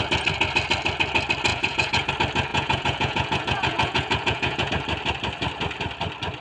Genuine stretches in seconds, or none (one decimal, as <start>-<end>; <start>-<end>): 0.0-1.5; 2.1-2.5; 4.7-6.4